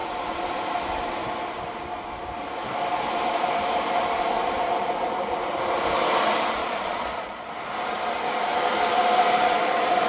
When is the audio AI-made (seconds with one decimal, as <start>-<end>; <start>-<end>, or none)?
6.6-7.5